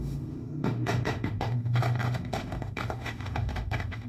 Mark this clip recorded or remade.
remade